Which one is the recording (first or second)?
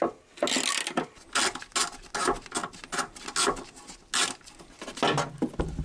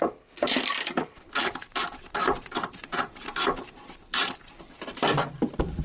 first